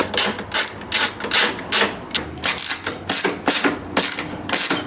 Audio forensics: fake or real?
real